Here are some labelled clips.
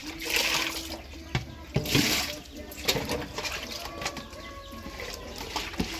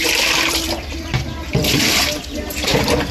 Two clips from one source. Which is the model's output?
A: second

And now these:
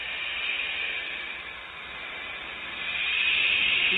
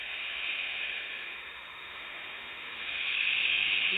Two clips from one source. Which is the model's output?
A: second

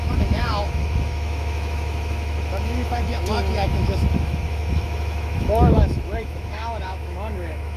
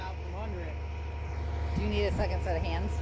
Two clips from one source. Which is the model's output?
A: first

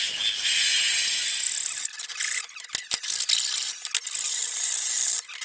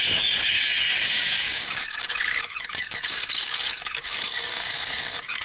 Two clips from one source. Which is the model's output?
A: second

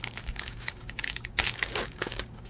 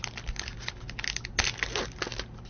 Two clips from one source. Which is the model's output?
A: first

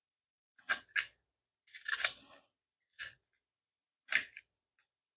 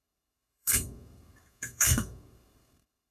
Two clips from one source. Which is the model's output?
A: second